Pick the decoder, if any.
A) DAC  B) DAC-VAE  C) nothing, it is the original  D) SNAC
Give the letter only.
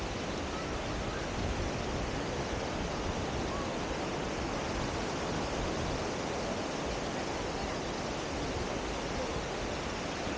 C